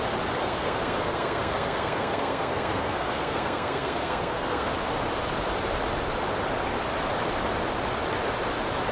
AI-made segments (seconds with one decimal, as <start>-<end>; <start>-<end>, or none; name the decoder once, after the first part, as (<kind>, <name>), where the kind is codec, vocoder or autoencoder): 0.4-4.7 (codec, SNAC)